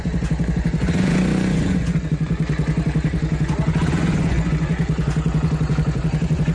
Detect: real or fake fake